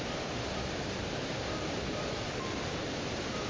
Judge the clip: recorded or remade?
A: remade